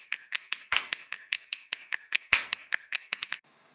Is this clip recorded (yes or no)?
no